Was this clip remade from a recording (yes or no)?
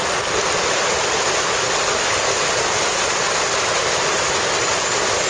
no